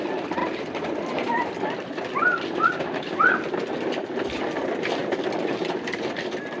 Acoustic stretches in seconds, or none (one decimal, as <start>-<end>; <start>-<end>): 5.0-6.6